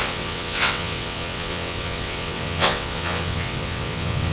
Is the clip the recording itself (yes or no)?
no